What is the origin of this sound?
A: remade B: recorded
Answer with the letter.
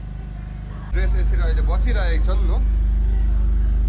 B